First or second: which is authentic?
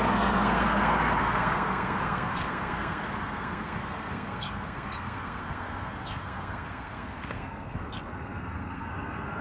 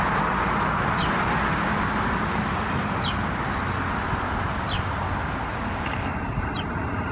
second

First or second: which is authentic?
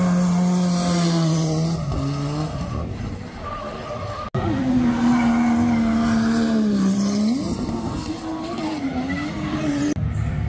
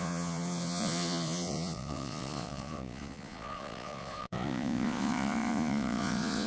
first